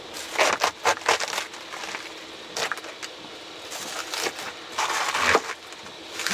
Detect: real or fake real